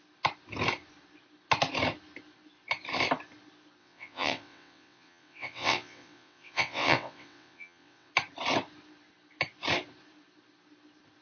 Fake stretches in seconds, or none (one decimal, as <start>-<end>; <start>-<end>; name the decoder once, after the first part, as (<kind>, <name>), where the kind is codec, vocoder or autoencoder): 3.8-8.1 (vocoder, WaveNeXt)